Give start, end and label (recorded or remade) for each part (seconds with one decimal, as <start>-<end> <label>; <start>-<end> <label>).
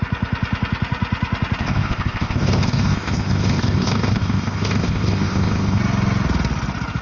0.0-1.6 recorded; 1.6-5.8 remade; 5.8-7.0 recorded